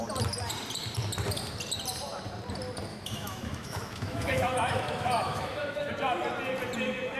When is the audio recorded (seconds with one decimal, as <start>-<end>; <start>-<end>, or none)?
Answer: 0.0-2.9; 5.9-7.2